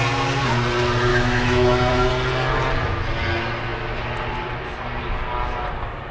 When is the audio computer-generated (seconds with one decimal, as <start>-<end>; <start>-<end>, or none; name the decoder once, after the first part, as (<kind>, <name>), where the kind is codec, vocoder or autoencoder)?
1.1-2.1 (autoencoder, DAC-VAE)